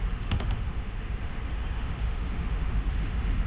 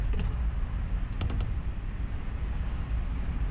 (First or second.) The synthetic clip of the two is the first